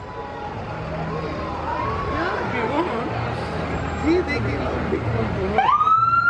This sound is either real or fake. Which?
real